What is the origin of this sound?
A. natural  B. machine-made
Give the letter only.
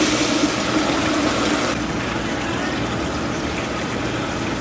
A